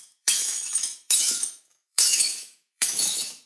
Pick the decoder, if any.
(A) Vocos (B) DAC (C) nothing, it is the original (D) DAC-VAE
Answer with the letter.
D